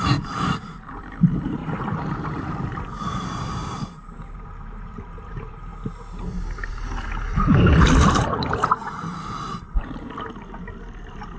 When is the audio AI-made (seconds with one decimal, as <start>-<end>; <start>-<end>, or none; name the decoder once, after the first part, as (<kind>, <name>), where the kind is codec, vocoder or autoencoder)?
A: 0.0-5.7 (vocoder, BigVGAN v2); 8.1-11.4